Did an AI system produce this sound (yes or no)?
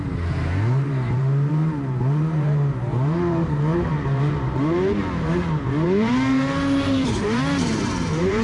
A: yes